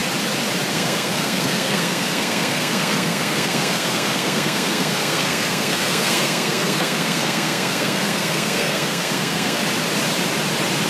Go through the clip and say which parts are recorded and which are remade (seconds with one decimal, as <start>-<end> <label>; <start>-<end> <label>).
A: 0.0-0.7 recorded; 0.7-9.6 remade; 9.6-10.9 recorded